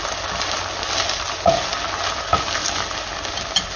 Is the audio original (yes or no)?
yes